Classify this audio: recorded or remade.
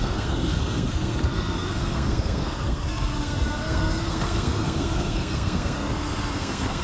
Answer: remade